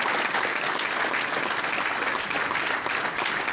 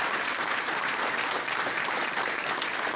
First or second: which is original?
first